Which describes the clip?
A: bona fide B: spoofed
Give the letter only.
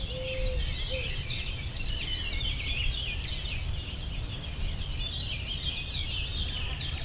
A